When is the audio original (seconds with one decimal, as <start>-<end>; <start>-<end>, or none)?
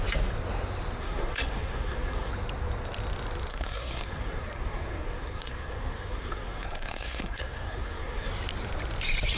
0.0-1.0; 2.3-3.5; 8.3-9.4